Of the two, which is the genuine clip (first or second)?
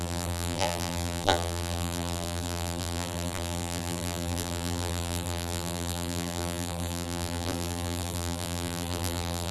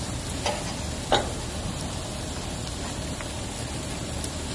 second